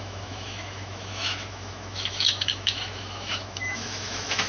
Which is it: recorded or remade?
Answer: remade